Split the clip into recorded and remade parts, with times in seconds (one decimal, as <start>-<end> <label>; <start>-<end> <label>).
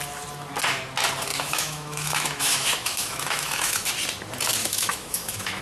0.0-1.3 recorded; 1.3-3.9 remade; 3.9-4.6 recorded; 4.6-5.6 remade